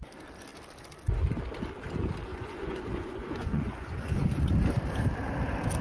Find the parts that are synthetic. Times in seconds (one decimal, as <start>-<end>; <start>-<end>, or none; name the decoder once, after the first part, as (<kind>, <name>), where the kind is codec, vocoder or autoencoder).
2.3-4.5 (vocoder, Vocos)

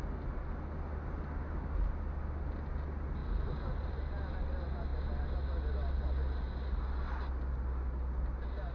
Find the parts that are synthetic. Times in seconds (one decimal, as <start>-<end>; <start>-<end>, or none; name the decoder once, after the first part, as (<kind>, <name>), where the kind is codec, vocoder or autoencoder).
none

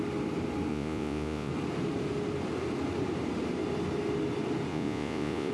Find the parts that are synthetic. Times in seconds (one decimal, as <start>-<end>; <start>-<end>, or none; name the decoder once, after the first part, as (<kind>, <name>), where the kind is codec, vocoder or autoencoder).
0.7-1.5 (vocoder, Vocos); 4.7-5.5

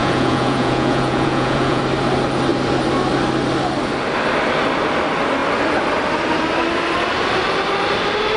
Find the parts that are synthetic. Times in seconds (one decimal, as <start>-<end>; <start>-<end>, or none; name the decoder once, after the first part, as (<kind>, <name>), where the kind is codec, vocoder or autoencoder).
0.0-1.8 (vocoder, Vocos)

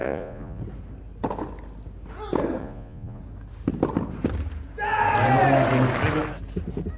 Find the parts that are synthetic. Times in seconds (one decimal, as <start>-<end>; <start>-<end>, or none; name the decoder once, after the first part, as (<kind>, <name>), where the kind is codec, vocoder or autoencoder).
0.0-0.6 (vocoder, Vocos); 2.6-3.2